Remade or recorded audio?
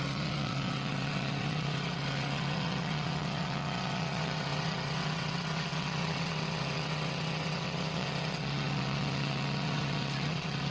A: remade